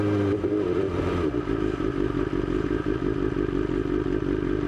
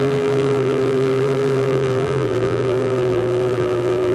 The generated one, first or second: second